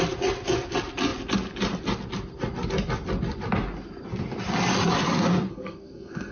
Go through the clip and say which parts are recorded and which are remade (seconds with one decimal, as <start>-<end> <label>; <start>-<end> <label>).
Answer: 0.0-5.5 recorded; 5.5-6.3 remade